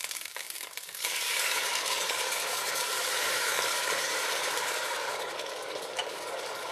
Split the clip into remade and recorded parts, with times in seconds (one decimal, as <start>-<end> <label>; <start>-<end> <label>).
0.0-6.7 remade